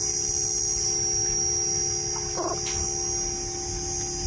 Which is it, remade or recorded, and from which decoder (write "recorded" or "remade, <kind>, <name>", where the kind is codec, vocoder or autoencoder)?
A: recorded